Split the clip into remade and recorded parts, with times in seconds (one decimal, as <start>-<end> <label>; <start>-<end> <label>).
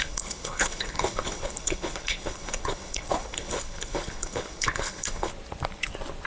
0.0-5.3 remade; 5.3-6.3 recorded